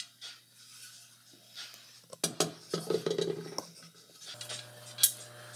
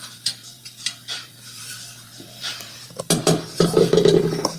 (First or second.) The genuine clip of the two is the first